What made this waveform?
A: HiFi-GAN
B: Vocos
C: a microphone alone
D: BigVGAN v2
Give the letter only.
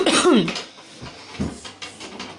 C